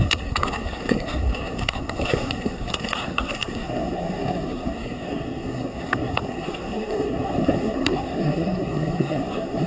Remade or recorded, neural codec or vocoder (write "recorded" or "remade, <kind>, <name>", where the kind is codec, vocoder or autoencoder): remade, codec, SNAC